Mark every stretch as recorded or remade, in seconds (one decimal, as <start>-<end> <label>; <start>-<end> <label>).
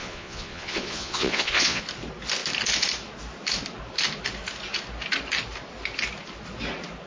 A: 0.0-1.8 remade; 1.8-7.1 recorded